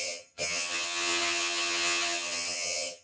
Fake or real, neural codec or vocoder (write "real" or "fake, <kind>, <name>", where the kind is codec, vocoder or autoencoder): fake, vocoder, HiFi-GAN